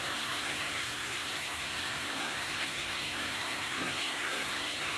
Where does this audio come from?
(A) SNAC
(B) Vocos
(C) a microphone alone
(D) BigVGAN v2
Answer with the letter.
A